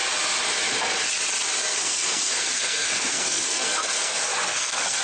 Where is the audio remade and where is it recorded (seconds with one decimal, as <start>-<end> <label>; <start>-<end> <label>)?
0.0-1.7 recorded; 1.7-5.0 remade